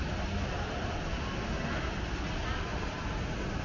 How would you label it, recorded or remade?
recorded